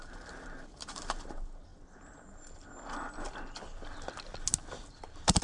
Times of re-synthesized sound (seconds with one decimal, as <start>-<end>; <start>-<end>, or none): 0.0-1.7; 4.9-5.4

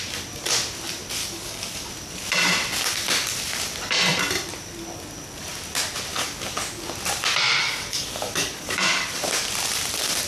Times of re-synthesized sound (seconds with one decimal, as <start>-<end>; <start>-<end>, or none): 1.2-1.9; 6.1-6.9; 7.6-9.2

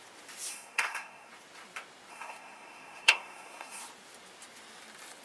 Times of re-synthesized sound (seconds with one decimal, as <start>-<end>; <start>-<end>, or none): 0.5-1.3; 2.1-3.8

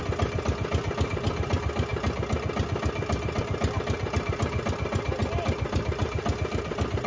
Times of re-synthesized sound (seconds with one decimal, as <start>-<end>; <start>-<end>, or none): none

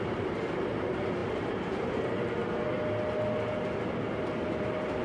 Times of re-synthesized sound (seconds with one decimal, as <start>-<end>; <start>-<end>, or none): 0.0-2.4; 4.2-5.0

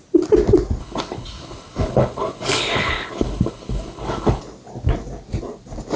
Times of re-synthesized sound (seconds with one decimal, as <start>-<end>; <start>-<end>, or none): 0.8-4.4

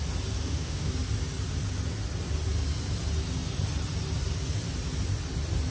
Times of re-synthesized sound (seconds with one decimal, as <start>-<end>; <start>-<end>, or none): 0.4-0.9

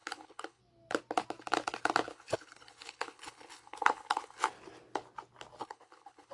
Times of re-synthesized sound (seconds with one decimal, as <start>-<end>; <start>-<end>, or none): 0.0-0.6; 2.1-4.5; 5.6-6.3